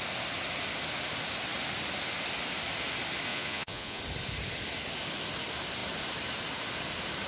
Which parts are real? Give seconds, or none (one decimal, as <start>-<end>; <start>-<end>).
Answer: 0.0-3.3; 4.0-7.3